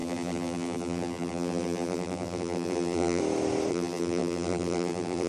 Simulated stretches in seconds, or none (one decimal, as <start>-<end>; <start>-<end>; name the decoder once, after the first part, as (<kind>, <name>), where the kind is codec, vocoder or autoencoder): 0.0-3.2 (vocoder, BigVGAN v2); 3.7-5.3